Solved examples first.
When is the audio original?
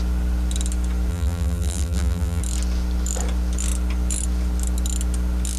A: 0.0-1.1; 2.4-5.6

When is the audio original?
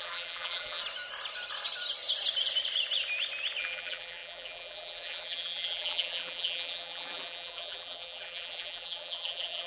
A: 0.8-3.6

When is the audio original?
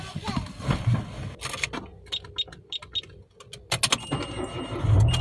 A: 0.0-5.2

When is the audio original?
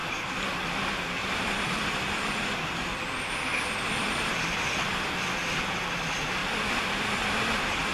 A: 0.0-1.2; 5.9-6.4